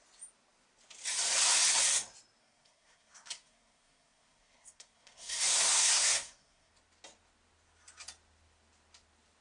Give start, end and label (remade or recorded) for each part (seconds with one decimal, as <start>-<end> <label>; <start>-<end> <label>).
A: 0.0-2.4 recorded; 2.4-6.7 remade; 6.7-9.4 recorded